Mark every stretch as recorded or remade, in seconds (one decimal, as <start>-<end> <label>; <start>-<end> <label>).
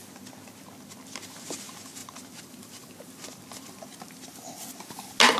0.0-5.4 recorded